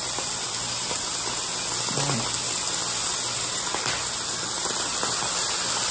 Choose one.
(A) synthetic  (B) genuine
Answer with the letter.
B